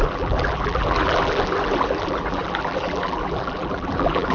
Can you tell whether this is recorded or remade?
remade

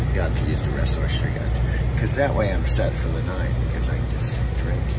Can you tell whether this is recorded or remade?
recorded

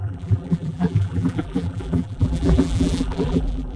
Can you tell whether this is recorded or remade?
remade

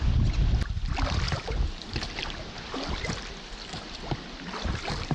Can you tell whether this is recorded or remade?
recorded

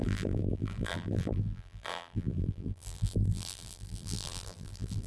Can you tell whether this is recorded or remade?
remade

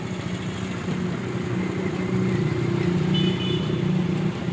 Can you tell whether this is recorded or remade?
recorded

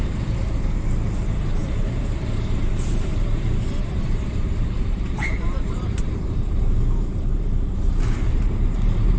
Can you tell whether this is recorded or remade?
remade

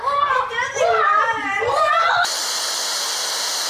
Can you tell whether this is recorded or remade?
recorded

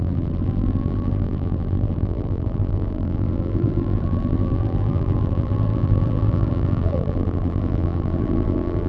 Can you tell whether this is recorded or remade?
remade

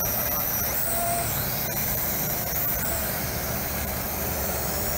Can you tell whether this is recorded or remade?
remade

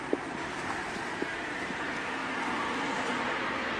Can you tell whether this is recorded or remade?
recorded